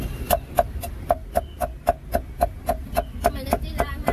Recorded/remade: recorded